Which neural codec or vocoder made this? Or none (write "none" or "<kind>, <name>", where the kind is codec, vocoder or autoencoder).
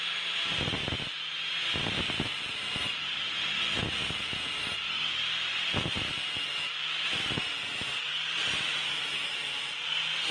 none